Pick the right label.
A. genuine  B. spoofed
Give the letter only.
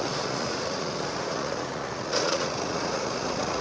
B